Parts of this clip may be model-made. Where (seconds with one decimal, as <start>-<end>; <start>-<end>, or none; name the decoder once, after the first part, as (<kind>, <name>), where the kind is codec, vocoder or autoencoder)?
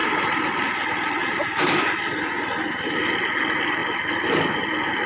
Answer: none